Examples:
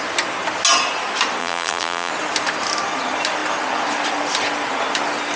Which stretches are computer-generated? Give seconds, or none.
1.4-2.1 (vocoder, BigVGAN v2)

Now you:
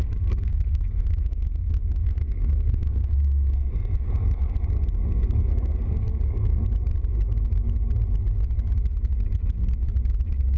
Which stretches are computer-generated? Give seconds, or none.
0.0-4.5 (codec, SNAC); 5.2-6.6